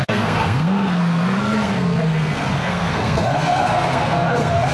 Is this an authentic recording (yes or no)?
no